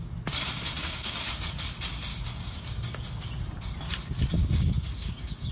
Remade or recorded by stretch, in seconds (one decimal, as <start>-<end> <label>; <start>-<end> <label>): 0.0-0.8 recorded; 0.8-1.5 remade; 1.5-2.1 recorded; 2.1-3.2 remade; 3.2-4.4 recorded; 4.4-5.5 remade